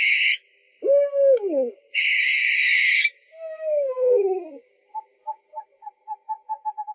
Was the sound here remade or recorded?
remade